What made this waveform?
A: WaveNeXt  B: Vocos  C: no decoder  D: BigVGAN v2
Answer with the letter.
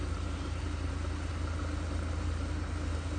C